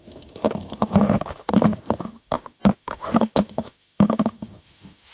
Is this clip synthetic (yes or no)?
yes